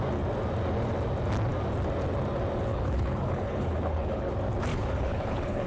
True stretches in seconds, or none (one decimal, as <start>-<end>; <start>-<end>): 0.0-2.7; 4.3-4.7